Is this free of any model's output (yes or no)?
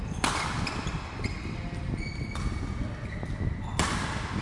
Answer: yes